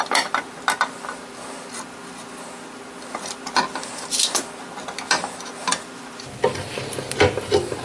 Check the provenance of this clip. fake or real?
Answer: real